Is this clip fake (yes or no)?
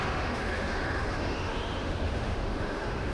yes